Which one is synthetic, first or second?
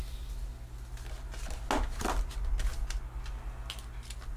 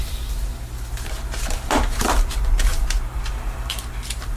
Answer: second